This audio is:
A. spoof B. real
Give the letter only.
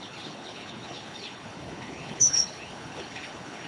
A